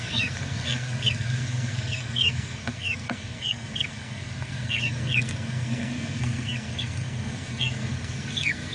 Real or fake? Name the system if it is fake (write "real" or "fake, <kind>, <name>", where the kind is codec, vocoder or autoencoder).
fake, codec, SNAC